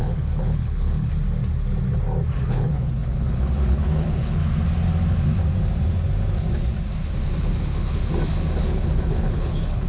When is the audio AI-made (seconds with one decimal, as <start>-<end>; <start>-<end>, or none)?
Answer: 0.0-1.1; 2.4-4.4; 7.6-8.0; 8.6-9.9